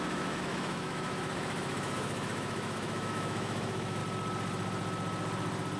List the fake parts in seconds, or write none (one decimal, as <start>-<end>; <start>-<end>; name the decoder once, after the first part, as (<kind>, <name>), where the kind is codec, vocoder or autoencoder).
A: 0.0-4.0 (autoencoder, DAC-VAE)

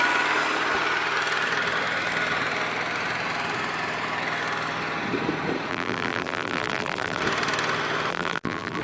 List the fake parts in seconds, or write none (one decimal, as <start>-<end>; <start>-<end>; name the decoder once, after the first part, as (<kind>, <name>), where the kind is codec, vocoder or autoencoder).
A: 5.7-7.2 (vocoder, BigVGAN v2); 8.1-8.8

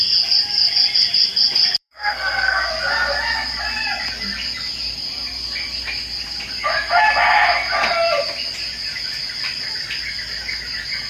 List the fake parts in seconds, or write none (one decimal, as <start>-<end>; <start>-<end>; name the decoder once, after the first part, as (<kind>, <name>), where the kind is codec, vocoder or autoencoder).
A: 1.8-2.7 (codec, SNAC)

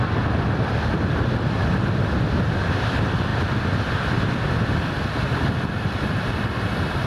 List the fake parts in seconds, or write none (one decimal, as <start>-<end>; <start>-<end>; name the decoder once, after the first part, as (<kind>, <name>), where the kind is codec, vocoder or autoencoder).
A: none

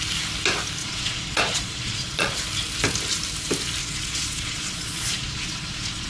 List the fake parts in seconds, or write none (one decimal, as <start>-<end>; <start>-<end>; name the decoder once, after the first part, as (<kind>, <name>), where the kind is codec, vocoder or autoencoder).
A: 0.8-2.4 (vocoder, Vocos); 3.8-6.1